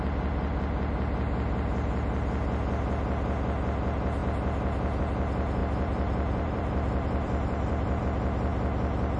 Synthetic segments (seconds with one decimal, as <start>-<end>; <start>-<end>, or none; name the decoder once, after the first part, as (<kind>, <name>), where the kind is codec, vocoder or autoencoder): 5.6-8.0 (vocoder, BigVGAN v2)